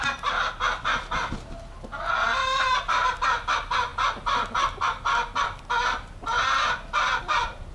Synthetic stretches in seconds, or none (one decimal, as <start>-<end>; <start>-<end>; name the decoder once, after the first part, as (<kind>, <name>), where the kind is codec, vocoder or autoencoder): none